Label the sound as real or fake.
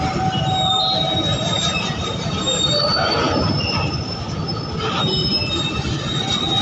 real